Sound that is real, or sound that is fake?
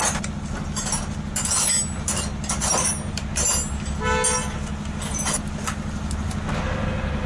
real